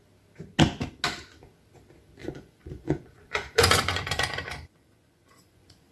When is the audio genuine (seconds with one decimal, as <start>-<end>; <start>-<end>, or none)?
0.0-2.2